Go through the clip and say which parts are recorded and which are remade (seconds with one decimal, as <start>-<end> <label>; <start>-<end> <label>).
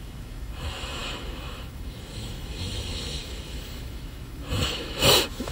0.0-5.5 remade